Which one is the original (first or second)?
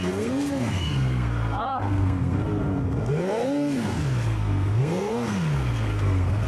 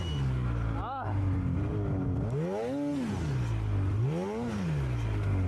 second